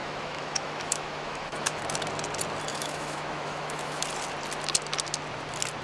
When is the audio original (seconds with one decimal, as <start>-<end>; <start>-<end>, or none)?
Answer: 1.8-2.7; 4.0-5.8